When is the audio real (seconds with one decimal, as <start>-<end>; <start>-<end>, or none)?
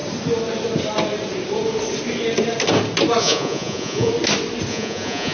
0.0-3.2; 4.1-4.7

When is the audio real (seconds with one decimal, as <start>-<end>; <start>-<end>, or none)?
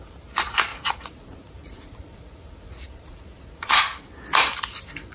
0.0-0.7; 3.8-5.1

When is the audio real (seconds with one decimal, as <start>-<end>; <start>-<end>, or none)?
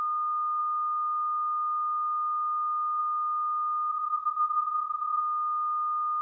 0.0-3.9; 5.2-6.2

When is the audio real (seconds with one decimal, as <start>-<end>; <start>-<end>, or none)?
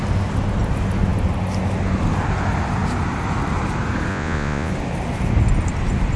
0.0-4.1; 4.7-6.2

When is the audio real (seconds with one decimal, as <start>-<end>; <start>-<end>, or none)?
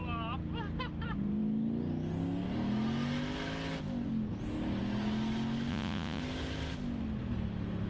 0.0-5.7; 6.2-7.9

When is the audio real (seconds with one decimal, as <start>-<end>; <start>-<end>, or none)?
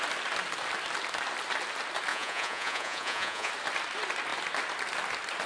0.0-2.1; 3.5-5.5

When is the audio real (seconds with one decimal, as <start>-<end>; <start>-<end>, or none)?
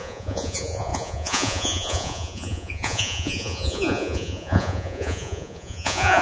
none